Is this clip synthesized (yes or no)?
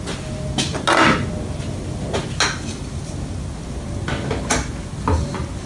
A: no